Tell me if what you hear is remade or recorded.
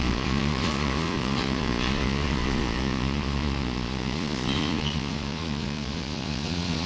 remade